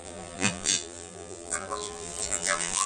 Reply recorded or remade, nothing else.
remade